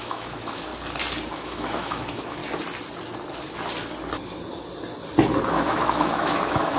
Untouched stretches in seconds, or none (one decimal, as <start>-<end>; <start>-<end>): 0.7-1.3; 2.4-5.5